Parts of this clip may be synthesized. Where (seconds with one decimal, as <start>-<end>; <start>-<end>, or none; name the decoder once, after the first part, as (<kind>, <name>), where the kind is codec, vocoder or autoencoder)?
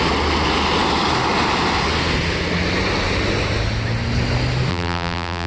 4.7-5.5 (vocoder, BigVGAN v2)